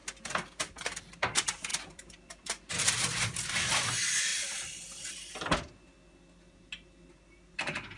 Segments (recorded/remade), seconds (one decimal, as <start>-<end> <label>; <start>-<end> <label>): 0.0-1.7 recorded; 1.7-2.7 remade; 2.7-4.3 recorded; 4.3-5.3 remade; 5.3-8.0 recorded